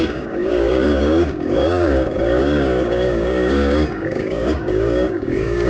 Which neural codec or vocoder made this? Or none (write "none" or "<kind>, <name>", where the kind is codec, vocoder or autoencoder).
codec, DAC